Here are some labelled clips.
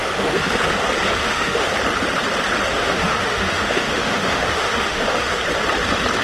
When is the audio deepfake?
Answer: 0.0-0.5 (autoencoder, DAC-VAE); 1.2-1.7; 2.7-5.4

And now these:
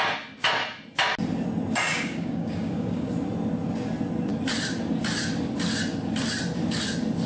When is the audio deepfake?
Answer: 1.9-3.1 (codec, DAC)

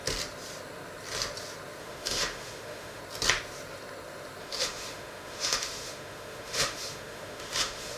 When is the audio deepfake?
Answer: 1.8-3.0 (autoencoder, DAC-VAE); 4.4-8.0

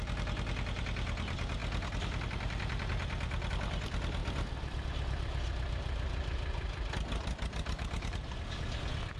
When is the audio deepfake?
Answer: 0.0-9.2 (vocoder, BigVGAN v2)

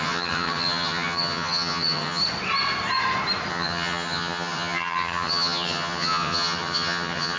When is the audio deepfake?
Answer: 0.0-2.2 (vocoder, HiFi-GAN); 3.5-7.4

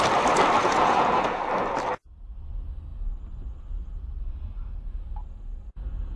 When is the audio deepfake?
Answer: 0.6-1.4 (vocoder, Vocos)

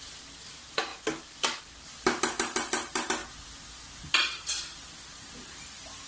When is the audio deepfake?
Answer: 0.0-3.2 (vocoder, BigVGAN v2); 4.1-6.1